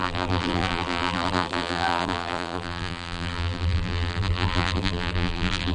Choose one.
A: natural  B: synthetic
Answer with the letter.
B